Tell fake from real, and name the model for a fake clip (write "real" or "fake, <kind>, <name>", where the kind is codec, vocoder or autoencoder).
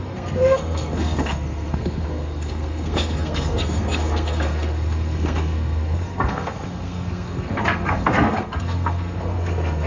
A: fake, codec, SNAC